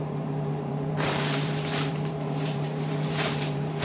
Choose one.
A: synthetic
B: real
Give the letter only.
A